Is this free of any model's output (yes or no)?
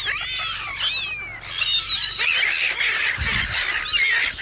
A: yes